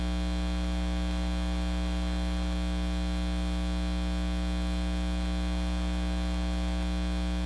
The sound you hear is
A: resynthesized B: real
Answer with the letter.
B